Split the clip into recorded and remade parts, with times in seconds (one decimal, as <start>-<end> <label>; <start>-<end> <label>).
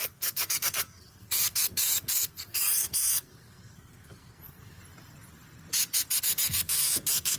0.0-4.8 remade; 4.8-6.2 recorded; 6.2-7.4 remade